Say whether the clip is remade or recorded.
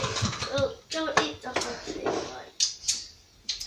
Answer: recorded